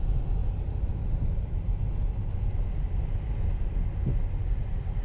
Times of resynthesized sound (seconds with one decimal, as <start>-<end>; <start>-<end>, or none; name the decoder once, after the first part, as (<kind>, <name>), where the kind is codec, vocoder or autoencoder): none

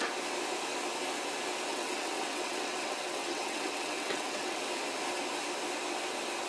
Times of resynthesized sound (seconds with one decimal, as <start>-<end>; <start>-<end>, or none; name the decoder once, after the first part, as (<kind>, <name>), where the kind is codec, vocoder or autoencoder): 1.7-4.6 (vocoder, WaveNeXt)